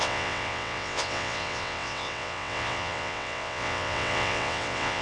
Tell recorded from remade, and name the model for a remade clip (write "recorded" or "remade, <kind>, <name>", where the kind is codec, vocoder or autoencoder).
remade, vocoder, WaveNeXt